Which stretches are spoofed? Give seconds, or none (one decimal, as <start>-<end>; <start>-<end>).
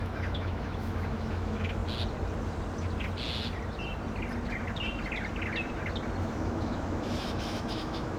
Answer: 0.0-1.8; 6.2-8.2